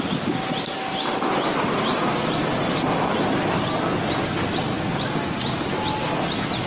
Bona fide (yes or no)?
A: yes